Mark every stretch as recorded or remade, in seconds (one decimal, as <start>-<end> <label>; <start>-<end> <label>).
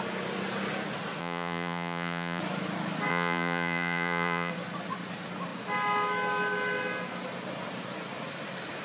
0.0-1.2 recorded; 1.2-2.4 remade; 2.4-3.1 recorded; 3.1-4.5 remade; 4.5-8.8 recorded